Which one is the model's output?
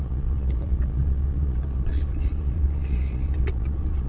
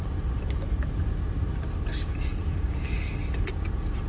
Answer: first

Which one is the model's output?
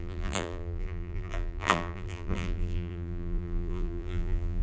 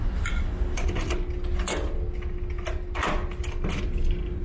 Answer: first